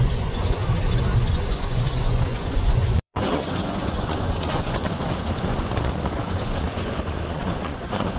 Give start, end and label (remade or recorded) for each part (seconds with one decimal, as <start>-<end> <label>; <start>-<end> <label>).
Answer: 0.0-0.6 remade; 0.6-1.2 recorded; 1.2-8.2 remade